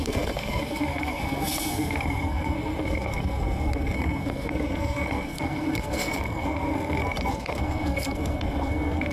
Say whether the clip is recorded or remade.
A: remade